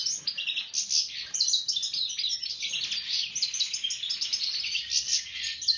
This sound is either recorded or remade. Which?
recorded